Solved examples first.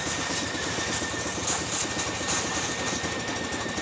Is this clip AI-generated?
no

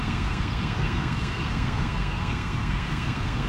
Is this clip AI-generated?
yes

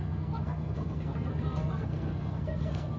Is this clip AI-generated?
yes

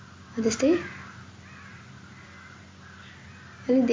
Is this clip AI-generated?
no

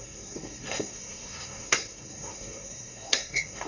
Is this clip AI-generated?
yes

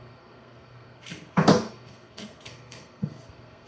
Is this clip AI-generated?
yes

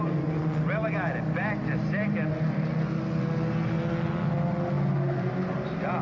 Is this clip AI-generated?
no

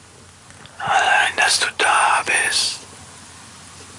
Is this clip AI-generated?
no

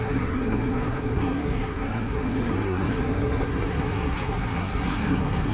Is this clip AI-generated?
yes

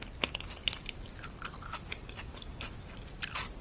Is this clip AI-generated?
no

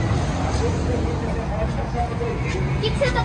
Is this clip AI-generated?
no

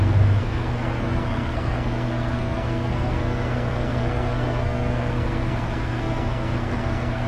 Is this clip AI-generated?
yes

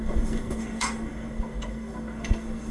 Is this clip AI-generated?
yes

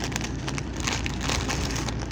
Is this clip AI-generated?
no